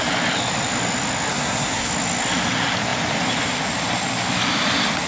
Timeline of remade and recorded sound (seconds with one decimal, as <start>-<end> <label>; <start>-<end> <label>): 0.0-1.3 recorded; 1.3-1.9 remade; 1.9-5.1 recorded